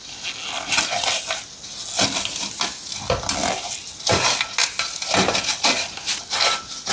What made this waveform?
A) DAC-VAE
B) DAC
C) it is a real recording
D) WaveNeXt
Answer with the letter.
C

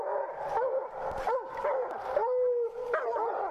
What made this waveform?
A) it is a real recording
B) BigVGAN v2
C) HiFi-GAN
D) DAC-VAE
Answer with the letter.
A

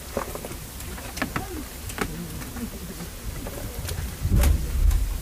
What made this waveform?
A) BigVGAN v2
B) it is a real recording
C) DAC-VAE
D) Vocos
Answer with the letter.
B